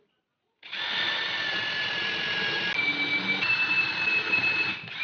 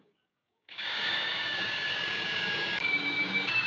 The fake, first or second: second